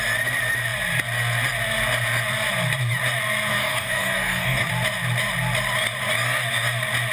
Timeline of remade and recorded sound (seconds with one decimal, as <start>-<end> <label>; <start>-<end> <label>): 0.0-3.5 recorded; 3.5-4.7 remade; 4.7-7.1 recorded